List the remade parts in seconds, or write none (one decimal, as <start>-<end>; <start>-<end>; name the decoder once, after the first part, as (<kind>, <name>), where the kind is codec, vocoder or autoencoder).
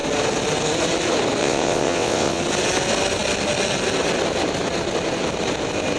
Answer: 1.4-2.4 (vocoder, WaveNeXt)